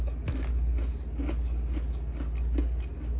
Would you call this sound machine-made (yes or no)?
no